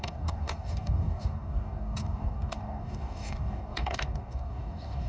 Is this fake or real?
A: fake